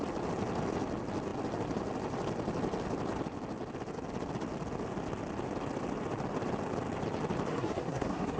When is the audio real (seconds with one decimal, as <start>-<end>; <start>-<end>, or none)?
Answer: 0.0-7.5